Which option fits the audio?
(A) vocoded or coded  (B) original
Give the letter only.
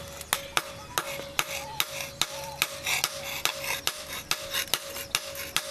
B